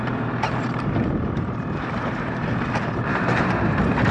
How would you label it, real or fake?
fake